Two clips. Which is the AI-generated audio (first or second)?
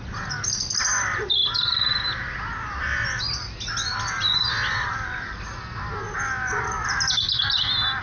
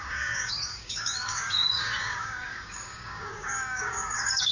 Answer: second